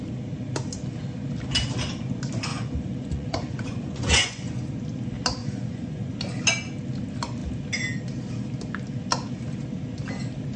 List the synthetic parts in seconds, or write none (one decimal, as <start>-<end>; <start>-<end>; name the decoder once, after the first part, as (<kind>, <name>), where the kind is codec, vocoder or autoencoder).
2.5-4.7 (vocoder, Vocos); 5.4-6.1